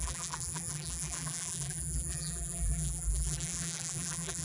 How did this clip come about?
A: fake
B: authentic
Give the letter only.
A